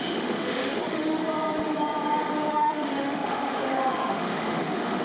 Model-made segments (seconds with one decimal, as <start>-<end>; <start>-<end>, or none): 0.0-1.2; 2.5-5.0